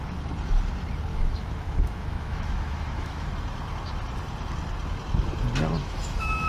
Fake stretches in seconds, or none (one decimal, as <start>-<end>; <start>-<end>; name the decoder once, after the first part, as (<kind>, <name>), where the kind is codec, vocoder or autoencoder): 1.1-3.3 (autoencoder, DAC-VAE); 5.8-6.5